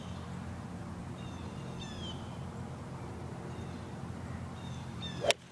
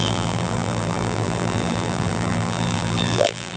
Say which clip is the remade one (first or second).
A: second